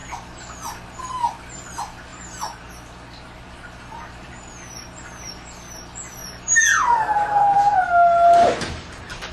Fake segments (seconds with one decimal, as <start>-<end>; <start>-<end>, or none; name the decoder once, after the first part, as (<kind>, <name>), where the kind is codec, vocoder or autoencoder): 2.1-2.7 (vocoder, BigVGAN v2); 6.2-9.3